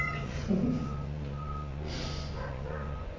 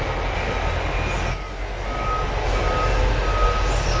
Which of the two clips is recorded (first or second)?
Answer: second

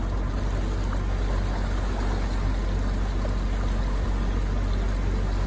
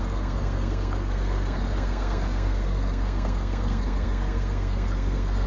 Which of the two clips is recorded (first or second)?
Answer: first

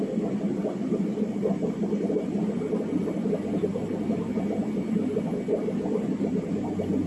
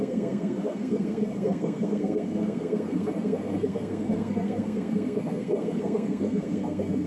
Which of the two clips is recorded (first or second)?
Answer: first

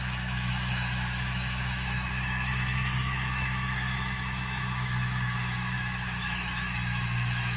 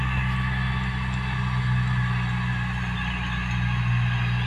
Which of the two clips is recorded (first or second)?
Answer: second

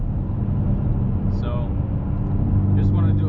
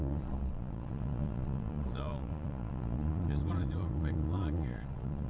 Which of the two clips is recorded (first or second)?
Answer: first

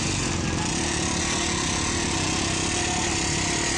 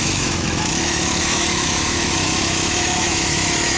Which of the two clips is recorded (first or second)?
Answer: first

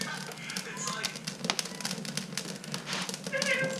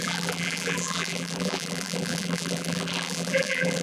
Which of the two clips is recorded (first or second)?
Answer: first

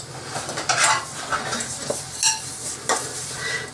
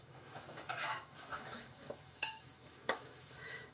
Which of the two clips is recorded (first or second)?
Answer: first